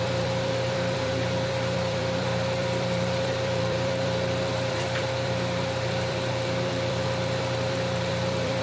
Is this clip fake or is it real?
fake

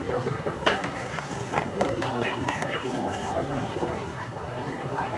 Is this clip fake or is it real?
fake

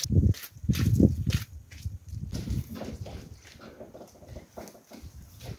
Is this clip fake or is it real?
real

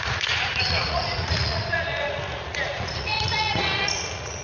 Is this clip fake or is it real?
fake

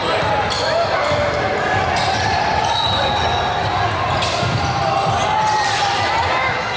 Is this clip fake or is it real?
real